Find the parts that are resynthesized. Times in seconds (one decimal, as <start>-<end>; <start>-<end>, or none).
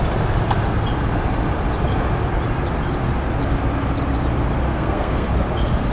4.7-5.3